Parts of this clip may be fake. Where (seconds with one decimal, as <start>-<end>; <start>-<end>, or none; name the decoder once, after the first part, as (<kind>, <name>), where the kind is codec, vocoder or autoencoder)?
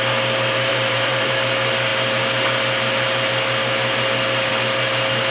0.7-1.3 (vocoder, BigVGAN v2)